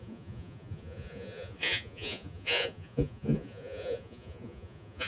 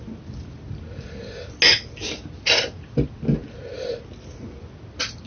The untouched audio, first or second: second